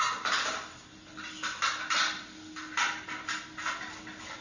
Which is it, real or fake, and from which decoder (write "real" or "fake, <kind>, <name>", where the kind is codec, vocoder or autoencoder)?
real